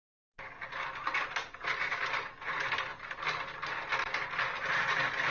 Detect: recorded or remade recorded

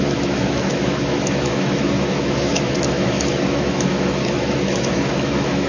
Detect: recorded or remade remade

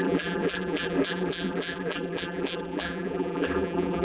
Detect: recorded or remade remade